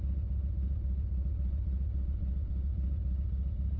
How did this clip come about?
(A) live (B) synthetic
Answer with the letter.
A